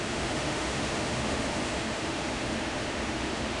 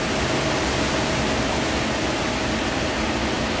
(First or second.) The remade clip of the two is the first